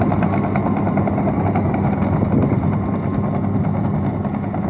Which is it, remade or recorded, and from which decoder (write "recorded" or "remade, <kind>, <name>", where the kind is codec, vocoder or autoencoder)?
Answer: recorded